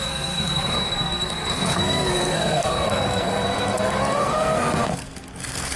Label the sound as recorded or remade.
remade